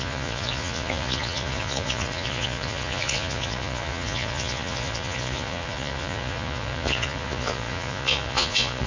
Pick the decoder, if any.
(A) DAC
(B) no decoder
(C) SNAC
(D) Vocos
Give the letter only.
D